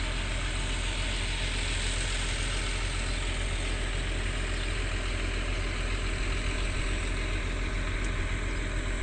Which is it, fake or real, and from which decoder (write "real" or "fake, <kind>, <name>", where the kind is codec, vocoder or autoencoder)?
real